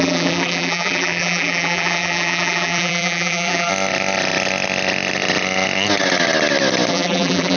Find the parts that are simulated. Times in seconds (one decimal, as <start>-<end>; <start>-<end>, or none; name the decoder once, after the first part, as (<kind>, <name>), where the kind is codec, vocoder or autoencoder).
0.0-3.7 (vocoder, BigVGAN v2); 6.9-7.6